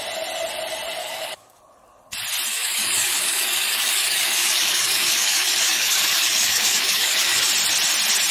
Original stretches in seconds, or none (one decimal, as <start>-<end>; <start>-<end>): 0.0-1.0; 1.6-2.5; 7.5-8.3

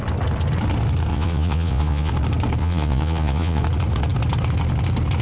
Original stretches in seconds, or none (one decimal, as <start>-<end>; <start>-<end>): 0.0-1.1; 2.1-2.6; 3.6-5.2

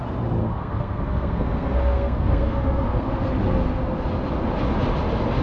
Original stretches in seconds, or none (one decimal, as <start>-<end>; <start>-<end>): 0.0-0.4; 3.1-5.4

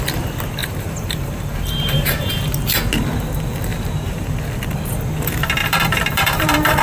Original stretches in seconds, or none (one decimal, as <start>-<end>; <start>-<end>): 0.0-0.6; 2.3-3.7; 4.4-5.6

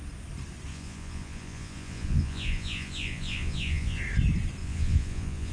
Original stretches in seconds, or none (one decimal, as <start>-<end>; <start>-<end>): 0.0-0.7; 4.0-4.6

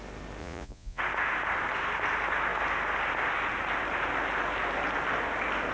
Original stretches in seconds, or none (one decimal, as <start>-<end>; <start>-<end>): 0.0-0.4; 1.0-5.7

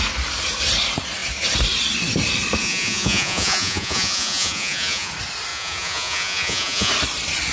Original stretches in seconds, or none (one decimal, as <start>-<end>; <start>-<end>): 0.0-2.6; 5.1-5.5; 6.9-7.5

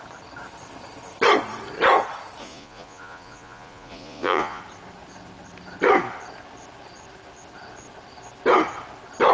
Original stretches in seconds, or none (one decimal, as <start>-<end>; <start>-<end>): 0.0-2.4; 4.6-9.3